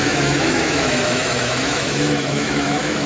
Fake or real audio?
fake